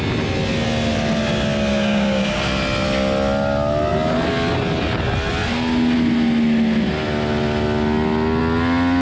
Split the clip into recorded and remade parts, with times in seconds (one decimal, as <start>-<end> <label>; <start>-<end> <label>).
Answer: 0.0-1.7 recorded; 1.7-2.2 remade; 2.2-9.0 recorded